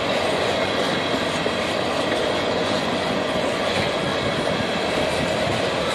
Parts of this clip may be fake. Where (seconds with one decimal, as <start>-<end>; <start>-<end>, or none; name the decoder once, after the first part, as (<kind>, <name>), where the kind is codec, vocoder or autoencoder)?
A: 0.0-0.9 (vocoder, Vocos); 2.2-4.1